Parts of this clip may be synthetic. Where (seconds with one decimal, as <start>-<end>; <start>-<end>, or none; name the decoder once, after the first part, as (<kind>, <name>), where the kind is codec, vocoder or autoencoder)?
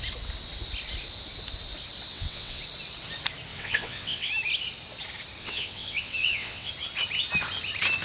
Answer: 2.1-2.6 (vocoder, WaveNeXt); 3.5-4.3; 5.4-6.7